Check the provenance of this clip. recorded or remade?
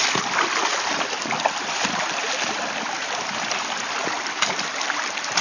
remade